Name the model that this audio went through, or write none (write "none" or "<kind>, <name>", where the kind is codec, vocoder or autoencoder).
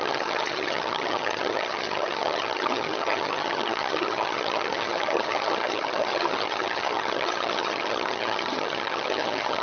vocoder, HiFi-GAN